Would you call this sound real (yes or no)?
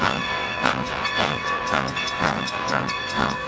no